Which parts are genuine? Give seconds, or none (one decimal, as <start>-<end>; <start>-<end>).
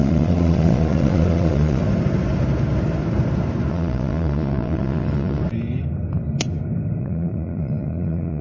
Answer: 1.8-3.7; 5.4-7.0